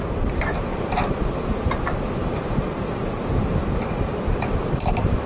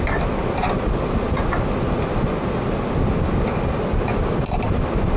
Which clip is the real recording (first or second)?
second